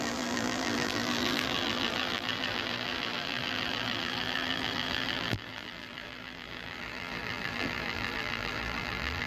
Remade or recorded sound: remade